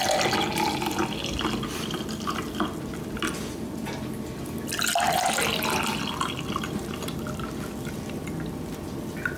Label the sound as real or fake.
real